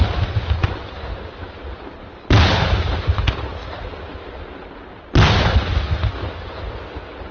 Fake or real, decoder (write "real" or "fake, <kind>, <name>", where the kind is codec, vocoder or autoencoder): real